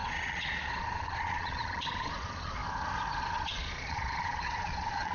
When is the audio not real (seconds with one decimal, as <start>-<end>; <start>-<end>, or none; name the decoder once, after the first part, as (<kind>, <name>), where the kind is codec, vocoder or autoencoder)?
0.0-2.6 (vocoder, Vocos); 3.2-5.1